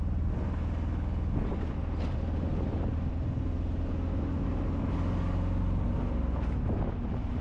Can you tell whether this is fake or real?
real